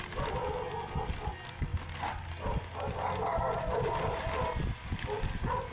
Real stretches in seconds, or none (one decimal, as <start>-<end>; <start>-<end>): 0.0-5.7

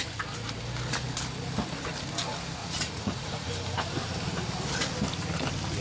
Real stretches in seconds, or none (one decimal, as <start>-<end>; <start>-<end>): 0.0-2.6; 3.5-5.8

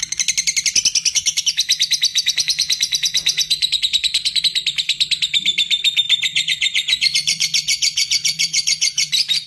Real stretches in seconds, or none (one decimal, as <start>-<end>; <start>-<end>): 0.0-2.1; 4.4-6.3; 9.1-9.5

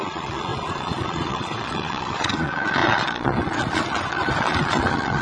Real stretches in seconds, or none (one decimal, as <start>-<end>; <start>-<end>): none

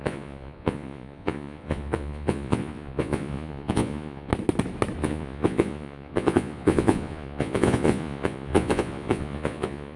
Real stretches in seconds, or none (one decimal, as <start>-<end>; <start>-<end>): 4.3-5.0